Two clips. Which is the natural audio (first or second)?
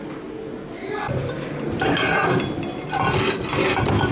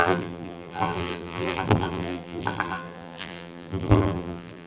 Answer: first